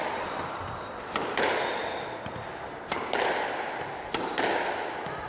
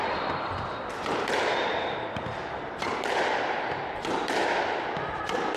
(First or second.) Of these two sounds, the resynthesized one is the second